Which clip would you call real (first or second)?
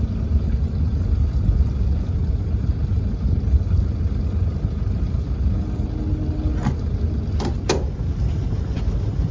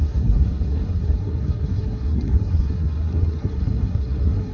first